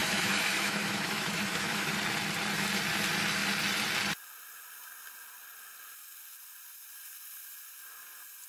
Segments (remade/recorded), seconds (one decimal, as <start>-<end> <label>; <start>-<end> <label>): 0.0-1.9 remade; 1.9-8.5 recorded